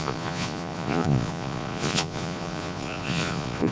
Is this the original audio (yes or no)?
no